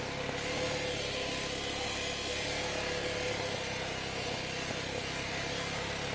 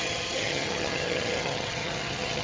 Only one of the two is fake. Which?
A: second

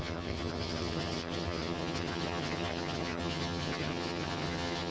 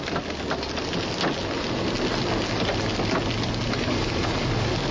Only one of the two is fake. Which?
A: first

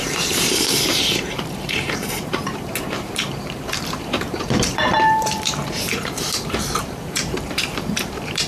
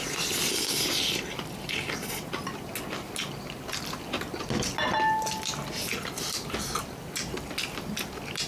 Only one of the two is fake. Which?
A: first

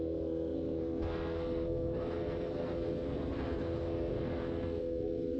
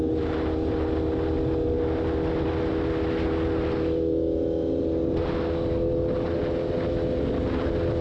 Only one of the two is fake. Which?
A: first